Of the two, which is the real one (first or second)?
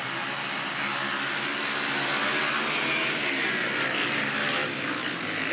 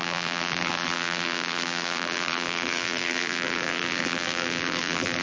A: first